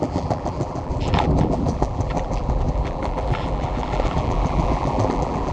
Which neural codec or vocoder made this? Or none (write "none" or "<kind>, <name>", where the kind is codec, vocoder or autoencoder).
vocoder, BigVGAN v2